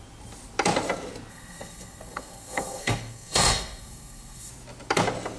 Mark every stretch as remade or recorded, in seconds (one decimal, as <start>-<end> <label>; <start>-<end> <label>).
0.0-1.3 recorded; 1.3-4.5 remade; 4.5-5.4 recorded